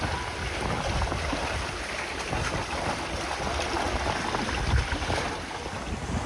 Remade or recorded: recorded